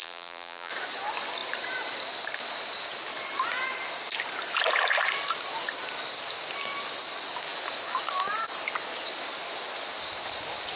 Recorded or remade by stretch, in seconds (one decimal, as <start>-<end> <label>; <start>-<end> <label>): 0.0-0.7 remade; 0.7-10.8 recorded